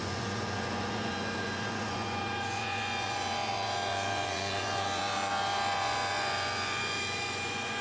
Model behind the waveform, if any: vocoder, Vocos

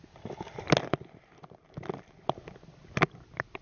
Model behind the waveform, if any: none